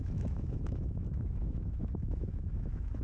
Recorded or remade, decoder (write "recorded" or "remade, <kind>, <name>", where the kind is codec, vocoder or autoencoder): remade, autoencoder, DAC-VAE